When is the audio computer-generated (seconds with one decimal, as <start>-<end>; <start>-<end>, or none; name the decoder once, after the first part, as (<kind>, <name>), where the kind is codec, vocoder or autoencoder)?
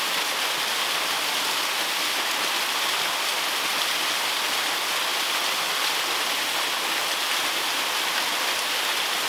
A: none